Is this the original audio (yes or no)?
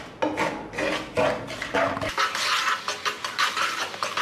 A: yes